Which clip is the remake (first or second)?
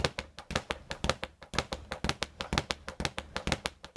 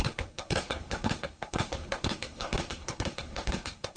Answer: second